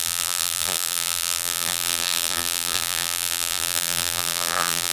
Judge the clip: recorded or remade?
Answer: remade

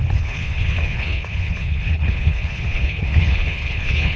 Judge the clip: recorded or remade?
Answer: remade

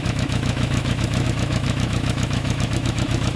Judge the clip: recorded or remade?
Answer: remade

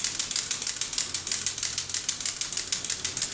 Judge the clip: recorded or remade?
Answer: recorded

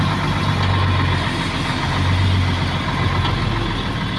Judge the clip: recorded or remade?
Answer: recorded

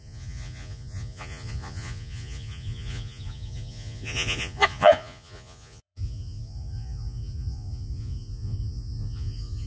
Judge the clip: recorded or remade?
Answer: remade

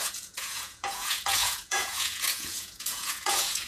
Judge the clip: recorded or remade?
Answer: remade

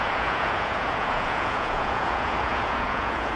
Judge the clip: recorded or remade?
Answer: remade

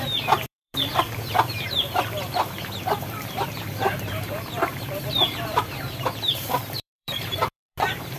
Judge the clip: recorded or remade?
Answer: remade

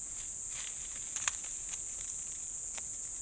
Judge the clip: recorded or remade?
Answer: recorded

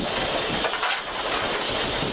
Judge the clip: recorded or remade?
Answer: recorded